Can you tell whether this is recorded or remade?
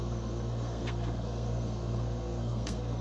remade